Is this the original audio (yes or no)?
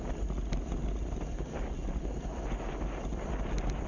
yes